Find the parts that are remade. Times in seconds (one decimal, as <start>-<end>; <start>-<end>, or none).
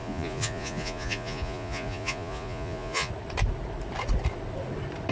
0.0-3.1